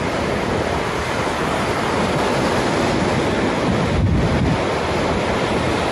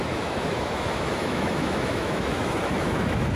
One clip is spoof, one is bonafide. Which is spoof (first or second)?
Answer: second